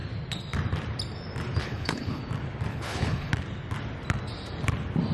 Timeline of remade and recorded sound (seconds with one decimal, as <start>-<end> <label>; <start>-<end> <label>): 0.0-1.6 recorded; 1.6-2.2 remade; 2.2-2.7 recorded; 2.7-3.3 remade; 3.3-5.1 recorded